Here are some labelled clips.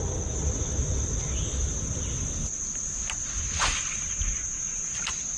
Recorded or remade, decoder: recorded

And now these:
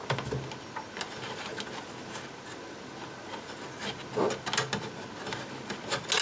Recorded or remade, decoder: recorded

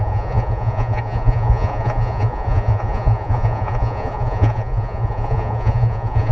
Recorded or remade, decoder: remade, vocoder, Vocos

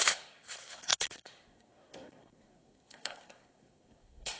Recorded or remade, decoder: remade, codec, SNAC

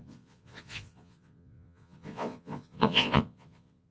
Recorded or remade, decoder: remade, vocoder, Vocos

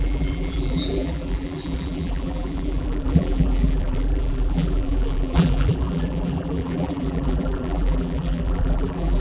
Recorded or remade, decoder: remade, vocoder, BigVGAN v2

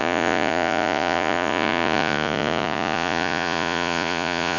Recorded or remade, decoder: remade, vocoder, Vocos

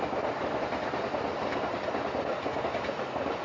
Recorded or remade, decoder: recorded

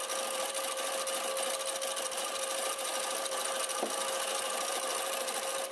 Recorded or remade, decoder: recorded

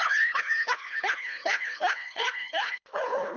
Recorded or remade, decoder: remade, codec, HILCodec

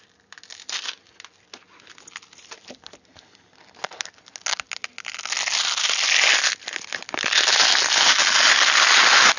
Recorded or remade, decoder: recorded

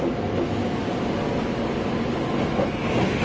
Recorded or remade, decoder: recorded